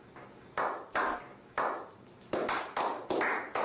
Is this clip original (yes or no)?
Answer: yes